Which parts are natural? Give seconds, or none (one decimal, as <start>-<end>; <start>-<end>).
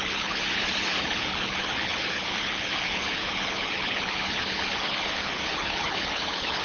none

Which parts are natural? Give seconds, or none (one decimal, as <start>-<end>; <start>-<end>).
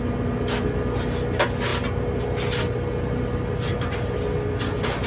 0.0-5.1